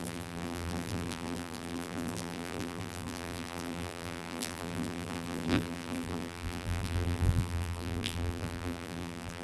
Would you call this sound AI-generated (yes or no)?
yes